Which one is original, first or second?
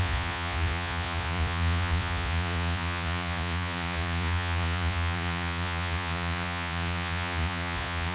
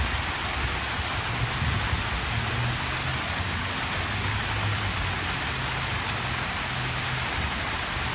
second